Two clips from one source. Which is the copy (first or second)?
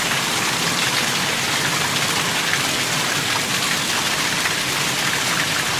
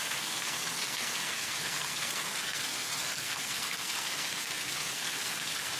second